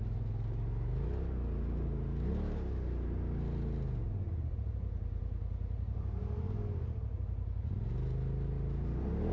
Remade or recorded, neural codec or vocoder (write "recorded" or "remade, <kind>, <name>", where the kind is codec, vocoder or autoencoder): recorded